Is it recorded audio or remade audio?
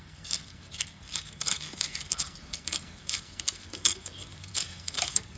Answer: remade